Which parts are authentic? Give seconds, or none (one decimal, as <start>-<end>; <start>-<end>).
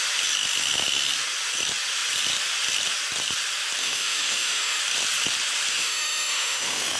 0.0-3.8; 4.8-5.7